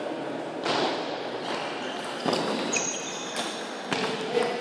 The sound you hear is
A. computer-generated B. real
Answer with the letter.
B